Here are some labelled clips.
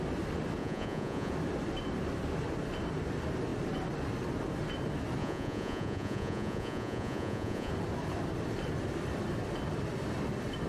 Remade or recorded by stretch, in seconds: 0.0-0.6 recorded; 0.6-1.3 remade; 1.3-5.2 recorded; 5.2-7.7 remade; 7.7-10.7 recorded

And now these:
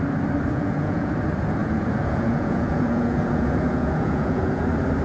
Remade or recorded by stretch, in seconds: 0.0-0.5 recorded; 0.5-1.1 remade; 1.1-1.6 recorded; 1.6-4.6 remade; 4.6-5.0 recorded